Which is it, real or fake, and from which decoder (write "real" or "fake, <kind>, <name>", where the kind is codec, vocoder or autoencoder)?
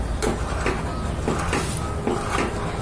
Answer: real